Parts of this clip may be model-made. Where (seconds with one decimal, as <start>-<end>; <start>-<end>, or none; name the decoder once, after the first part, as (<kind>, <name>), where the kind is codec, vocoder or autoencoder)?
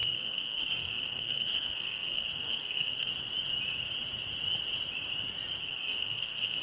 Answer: 0.0-3.1 (codec, SNAC); 5.6-6.6